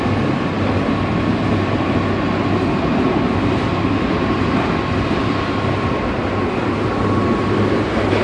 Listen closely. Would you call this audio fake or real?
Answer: real